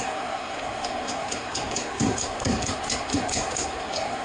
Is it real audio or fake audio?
fake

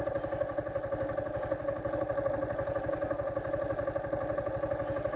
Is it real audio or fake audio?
real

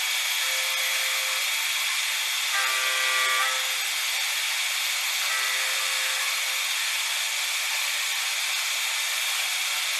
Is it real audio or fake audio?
real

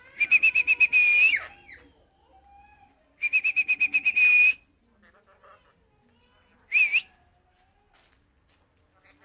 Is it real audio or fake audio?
real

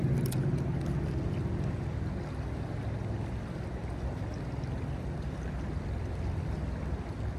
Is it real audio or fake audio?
real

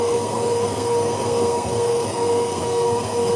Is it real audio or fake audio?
fake